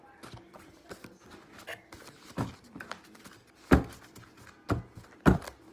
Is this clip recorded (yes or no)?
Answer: yes